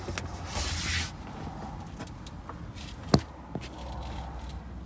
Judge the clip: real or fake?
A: real